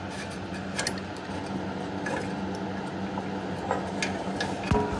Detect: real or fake real